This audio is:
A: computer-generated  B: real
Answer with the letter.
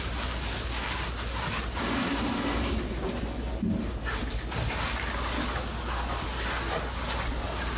B